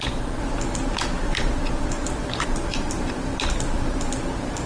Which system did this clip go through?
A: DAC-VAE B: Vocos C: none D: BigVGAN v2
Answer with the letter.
D